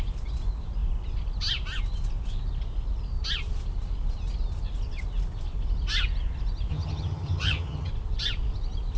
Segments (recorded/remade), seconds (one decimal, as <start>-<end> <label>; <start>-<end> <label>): 0.0-6.7 recorded; 6.7-7.9 remade; 7.9-9.0 recorded